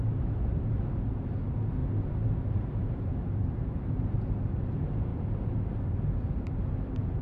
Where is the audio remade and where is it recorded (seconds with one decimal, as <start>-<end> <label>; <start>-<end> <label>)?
0.0-5.1 remade; 5.1-6.6 recorded; 6.6-7.2 remade